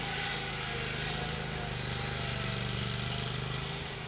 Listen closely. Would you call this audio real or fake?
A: real